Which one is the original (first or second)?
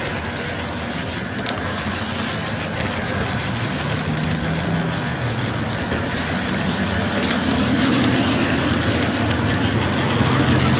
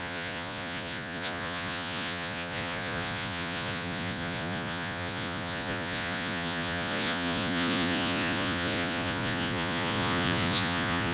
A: first